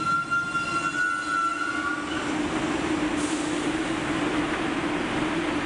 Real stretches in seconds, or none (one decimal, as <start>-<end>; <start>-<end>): 0.0-5.7